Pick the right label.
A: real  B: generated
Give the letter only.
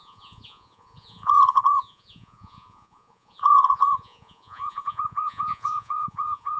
B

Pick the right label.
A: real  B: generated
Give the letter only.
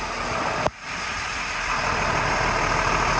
A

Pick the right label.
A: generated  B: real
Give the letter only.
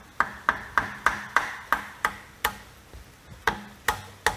B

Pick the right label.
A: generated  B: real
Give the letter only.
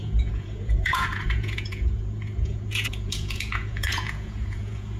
A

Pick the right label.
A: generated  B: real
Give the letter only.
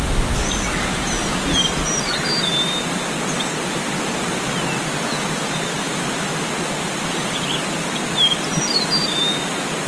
B